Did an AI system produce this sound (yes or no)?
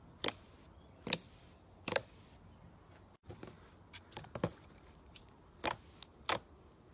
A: no